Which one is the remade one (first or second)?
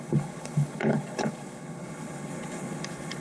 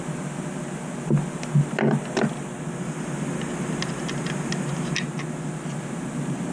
first